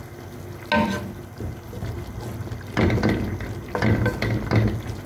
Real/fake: real